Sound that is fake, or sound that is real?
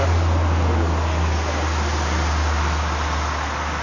real